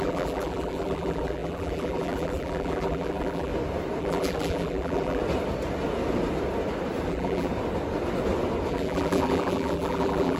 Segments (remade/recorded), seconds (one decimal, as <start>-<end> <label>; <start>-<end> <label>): 0.0-3.5 remade; 3.5-4.0 recorded; 4.0-5.2 remade; 5.2-7.1 recorded; 7.1-7.5 remade; 7.5-8.7 recorded; 8.7-10.4 remade